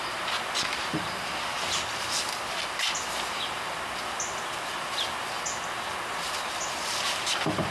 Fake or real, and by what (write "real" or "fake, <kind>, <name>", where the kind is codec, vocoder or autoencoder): real